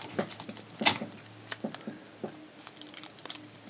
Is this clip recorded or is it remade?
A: recorded